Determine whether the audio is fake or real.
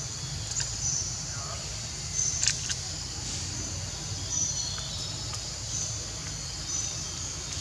real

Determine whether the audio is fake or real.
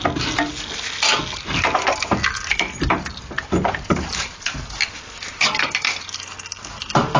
real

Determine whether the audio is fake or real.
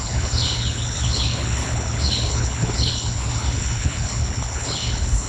fake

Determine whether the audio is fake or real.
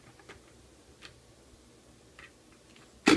real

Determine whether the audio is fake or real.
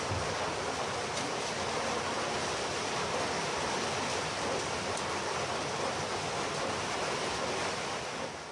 real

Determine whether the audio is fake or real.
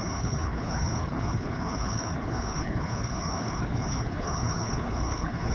fake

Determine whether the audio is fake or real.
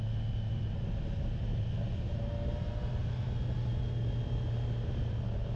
real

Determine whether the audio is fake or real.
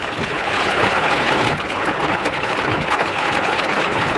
fake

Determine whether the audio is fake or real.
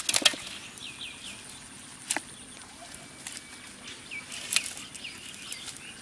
real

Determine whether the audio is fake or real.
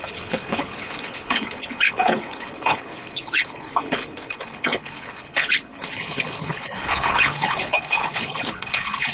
fake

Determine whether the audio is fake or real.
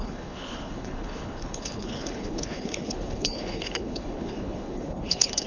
fake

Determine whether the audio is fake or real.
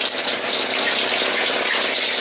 real